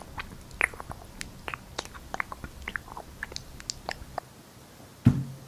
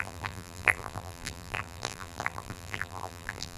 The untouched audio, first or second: first